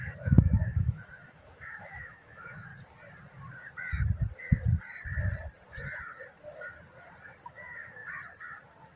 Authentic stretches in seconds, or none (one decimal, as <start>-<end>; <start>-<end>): 2.7-7.5; 8.0-9.0